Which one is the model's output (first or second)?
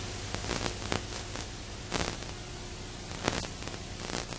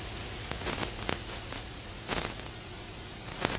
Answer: second